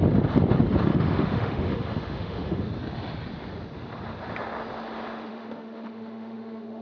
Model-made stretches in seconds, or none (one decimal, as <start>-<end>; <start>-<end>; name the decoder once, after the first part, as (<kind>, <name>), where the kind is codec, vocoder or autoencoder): 0.9-2.7 (autoencoder, DAC-VAE); 5.3-6.8